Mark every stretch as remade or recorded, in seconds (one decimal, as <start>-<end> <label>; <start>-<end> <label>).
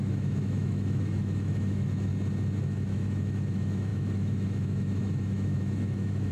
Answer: 0.0-2.1 remade; 2.1-2.6 recorded; 2.6-6.3 remade